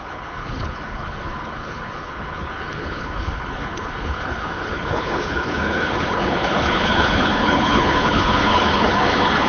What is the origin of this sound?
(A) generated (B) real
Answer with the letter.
A